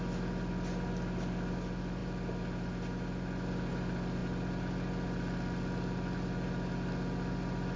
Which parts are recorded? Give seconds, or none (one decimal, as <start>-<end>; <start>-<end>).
0.0-7.8